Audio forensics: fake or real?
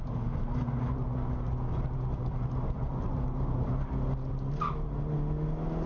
real